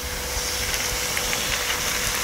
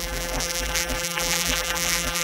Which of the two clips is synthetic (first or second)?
second